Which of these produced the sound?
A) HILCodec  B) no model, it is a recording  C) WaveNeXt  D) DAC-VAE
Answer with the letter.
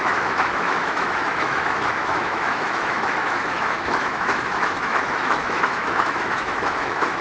D